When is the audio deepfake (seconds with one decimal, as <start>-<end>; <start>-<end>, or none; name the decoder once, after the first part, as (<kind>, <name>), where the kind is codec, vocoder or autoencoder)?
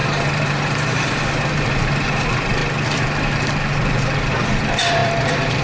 0.0-2.6 (vocoder, BigVGAN v2); 4.3-5.6